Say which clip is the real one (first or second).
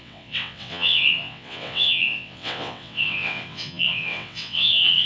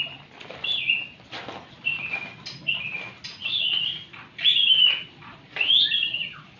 second